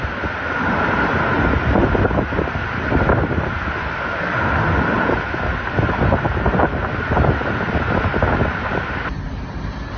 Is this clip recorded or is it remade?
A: recorded